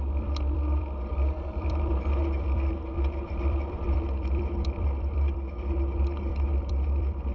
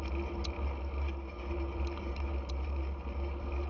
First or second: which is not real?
first